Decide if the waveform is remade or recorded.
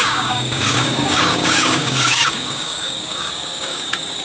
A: remade